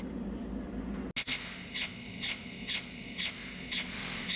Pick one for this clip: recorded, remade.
recorded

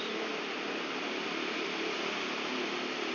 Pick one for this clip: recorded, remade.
remade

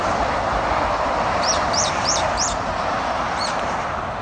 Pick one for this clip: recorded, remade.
remade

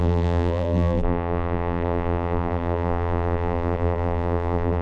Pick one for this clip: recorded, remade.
remade